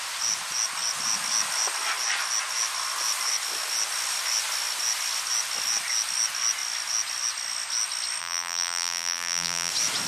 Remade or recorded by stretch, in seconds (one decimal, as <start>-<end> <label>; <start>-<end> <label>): 0.0-8.2 recorded; 8.2-9.7 remade; 9.7-10.1 recorded